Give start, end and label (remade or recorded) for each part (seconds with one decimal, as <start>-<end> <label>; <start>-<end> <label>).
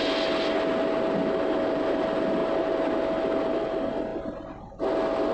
0.0-1.6 recorded; 1.6-2.4 remade; 2.4-3.5 recorded; 3.5-4.1 remade; 4.1-5.3 recorded